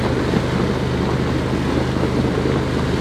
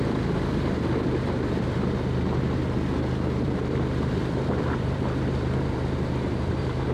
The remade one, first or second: second